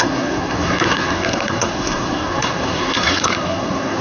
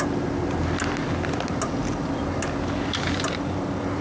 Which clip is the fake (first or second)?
first